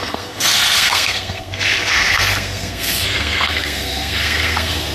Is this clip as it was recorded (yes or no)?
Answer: no